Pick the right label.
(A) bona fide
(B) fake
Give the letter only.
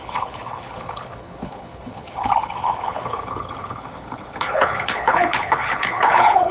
B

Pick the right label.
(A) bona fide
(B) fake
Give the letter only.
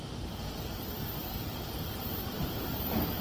B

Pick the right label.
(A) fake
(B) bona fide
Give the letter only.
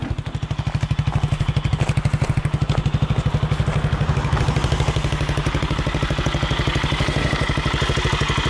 B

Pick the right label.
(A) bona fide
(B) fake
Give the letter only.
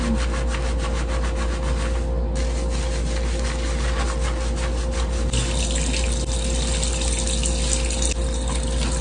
A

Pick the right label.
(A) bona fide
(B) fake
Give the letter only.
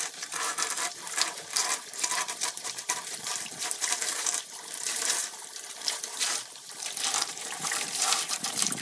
B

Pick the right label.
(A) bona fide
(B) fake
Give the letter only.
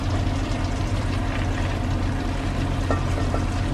A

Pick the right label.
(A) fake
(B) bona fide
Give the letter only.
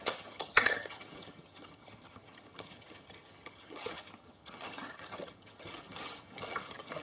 A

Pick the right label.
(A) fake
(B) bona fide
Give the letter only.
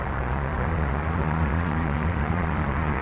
A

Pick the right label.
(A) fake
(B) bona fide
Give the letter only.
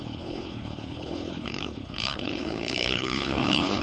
A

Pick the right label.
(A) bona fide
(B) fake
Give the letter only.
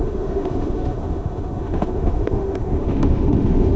B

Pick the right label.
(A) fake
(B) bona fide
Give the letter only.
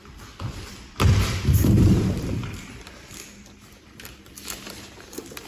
B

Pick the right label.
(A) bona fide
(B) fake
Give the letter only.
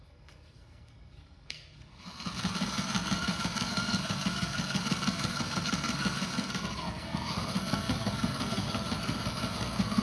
B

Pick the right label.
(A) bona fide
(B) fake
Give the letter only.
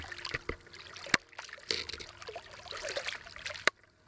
A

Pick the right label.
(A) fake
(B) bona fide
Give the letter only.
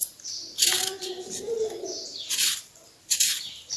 B